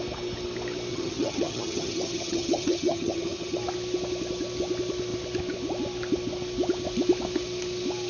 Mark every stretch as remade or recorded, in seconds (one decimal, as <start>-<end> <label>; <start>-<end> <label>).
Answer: 0.0-0.9 recorded; 0.9-3.6 remade; 3.6-8.1 recorded